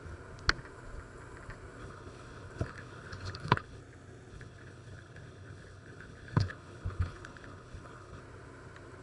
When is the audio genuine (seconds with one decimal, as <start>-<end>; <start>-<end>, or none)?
0.0-1.8; 3.8-4.3; 8.2-9.0